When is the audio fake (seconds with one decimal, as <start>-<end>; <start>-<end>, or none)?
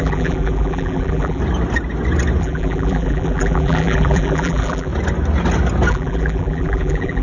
0.0-1.4; 2.4-4.9; 5.9-7.2